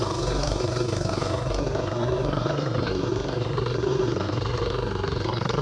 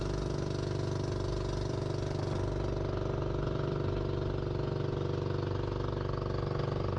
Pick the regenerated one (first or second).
first